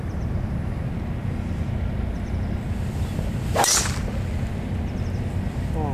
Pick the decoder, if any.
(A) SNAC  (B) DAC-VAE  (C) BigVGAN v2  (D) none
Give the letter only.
D